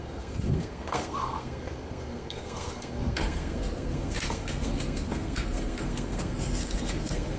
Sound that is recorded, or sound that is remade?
remade